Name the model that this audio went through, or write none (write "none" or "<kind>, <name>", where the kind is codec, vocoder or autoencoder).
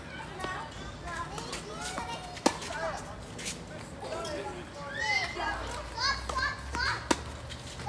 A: none